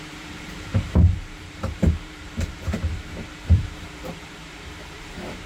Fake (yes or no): yes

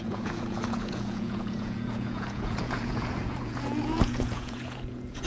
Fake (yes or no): yes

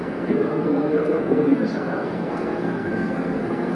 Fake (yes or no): yes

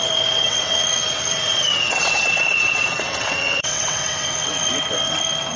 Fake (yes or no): yes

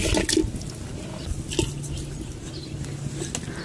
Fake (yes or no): no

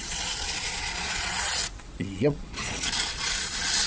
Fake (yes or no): yes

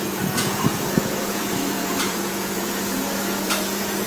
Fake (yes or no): yes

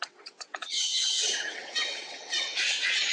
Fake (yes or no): yes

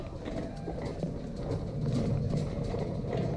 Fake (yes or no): no